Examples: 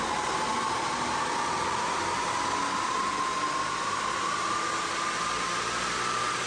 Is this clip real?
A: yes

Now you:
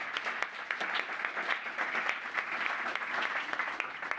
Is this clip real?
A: yes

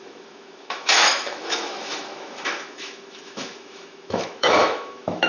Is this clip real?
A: no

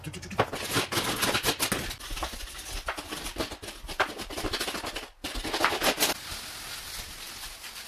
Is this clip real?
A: yes